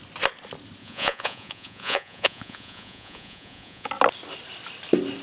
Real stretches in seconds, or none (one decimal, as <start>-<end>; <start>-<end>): 0.0-0.8; 3.9-5.2